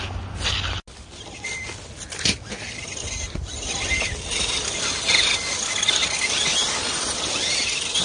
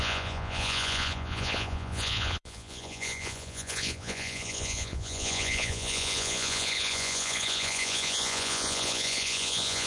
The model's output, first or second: second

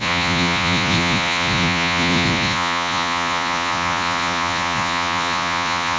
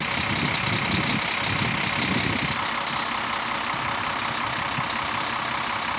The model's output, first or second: first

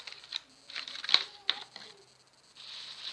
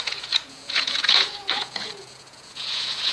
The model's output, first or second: second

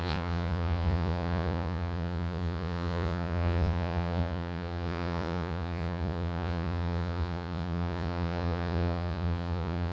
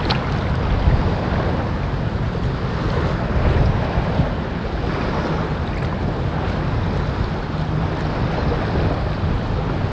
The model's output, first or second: first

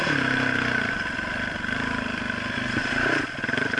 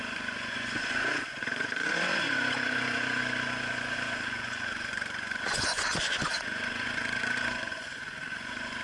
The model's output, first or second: second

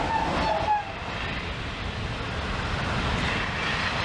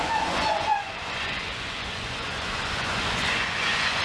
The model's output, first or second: second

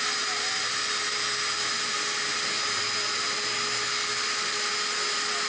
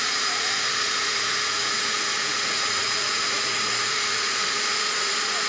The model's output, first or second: second